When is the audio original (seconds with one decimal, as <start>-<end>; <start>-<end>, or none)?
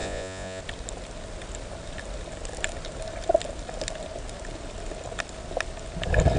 0.6-6.4